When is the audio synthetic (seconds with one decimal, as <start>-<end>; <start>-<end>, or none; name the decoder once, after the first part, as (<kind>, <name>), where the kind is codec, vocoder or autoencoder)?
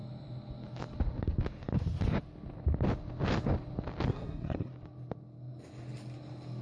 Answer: 4.1-4.7 (codec, SNAC)